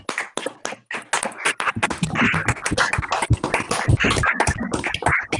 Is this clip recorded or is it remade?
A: recorded